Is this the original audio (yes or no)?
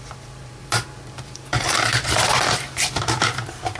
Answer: no